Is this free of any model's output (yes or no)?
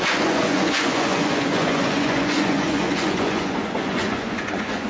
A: no